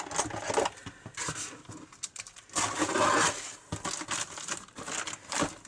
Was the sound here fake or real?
real